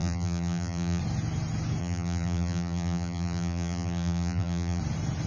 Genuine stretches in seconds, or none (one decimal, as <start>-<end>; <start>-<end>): 1.0-1.8; 4.8-5.3